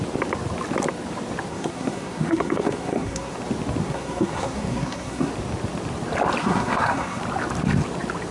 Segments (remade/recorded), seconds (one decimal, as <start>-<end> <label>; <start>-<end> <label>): 0.0-1.5 recorded; 1.5-3.4 remade; 3.4-3.8 recorded; 3.8-5.3 remade; 5.3-6.4 recorded; 6.4-7.2 remade; 7.2-8.3 recorded